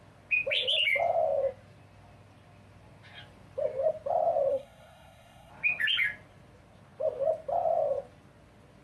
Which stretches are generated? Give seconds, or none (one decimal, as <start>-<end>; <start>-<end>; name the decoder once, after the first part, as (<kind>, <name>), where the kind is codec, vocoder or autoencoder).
4.5-5.5 (codec, SNAC)

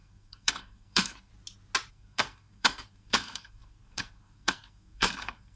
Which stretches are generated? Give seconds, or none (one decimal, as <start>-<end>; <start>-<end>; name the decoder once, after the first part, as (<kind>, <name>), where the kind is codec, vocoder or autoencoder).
0.0-1.3 (codec, SNAC); 1.9-5.6